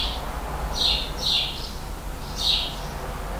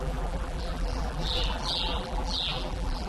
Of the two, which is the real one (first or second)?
first